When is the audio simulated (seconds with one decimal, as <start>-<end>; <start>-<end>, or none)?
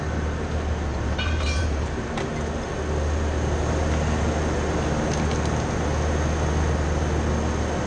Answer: 0.9-2.3